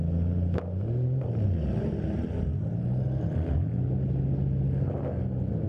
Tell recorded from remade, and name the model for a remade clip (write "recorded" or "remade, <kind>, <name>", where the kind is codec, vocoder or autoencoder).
recorded